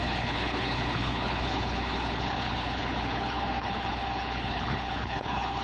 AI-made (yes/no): yes